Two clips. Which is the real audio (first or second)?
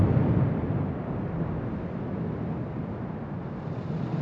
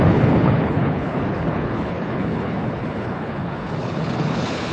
first